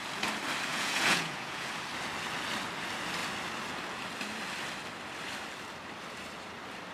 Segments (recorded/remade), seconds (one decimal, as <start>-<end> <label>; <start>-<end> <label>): 0.0-0.7 recorded; 0.7-1.7 remade; 1.7-6.9 recorded